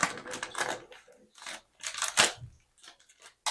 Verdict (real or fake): real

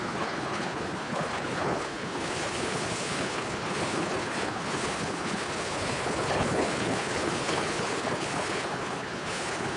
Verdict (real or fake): fake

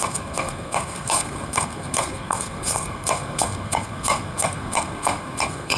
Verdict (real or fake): fake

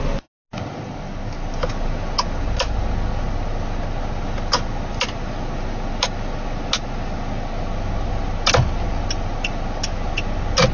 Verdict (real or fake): real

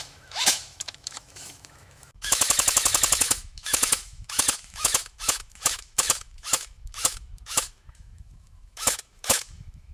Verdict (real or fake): fake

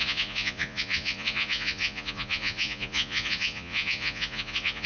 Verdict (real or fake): fake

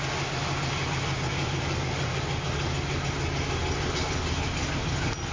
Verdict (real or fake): real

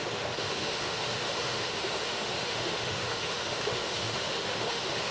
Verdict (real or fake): fake